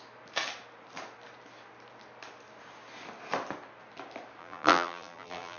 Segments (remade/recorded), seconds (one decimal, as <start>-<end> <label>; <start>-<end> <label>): 0.0-4.4 recorded; 4.4-5.6 remade